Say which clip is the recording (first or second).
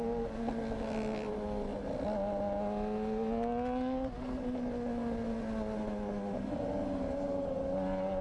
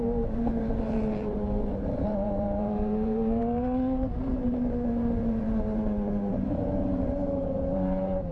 first